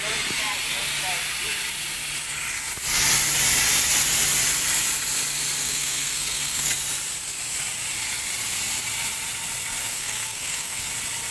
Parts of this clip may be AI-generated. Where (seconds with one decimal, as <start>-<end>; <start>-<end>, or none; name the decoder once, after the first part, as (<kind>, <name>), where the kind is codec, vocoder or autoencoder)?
5.6-6.7 (codec, SNAC); 9.8-10.9